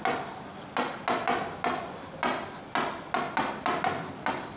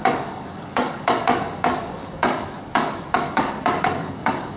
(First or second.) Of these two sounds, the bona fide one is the first